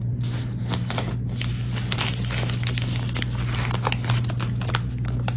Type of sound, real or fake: real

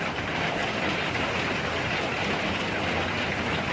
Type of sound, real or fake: real